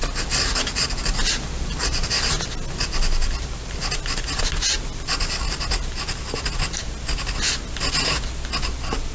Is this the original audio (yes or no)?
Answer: yes